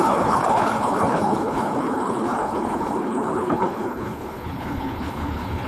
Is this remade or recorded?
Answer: remade